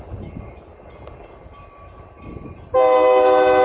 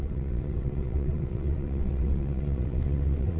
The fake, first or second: second